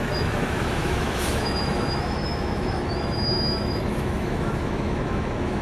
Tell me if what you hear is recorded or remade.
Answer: remade